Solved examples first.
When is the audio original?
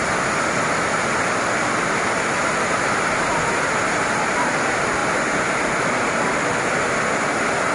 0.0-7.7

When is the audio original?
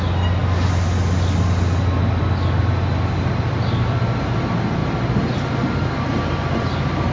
0.0-7.1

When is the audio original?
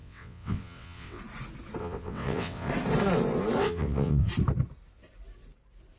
1.2-1.8; 2.7-3.6; 4.3-6.0